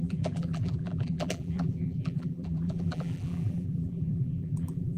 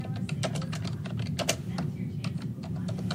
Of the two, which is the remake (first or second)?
first